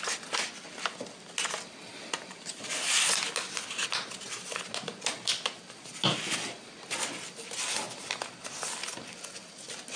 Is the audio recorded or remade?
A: recorded